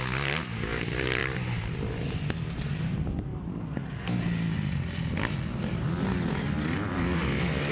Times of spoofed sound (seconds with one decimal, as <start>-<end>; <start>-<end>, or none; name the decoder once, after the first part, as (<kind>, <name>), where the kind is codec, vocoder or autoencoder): none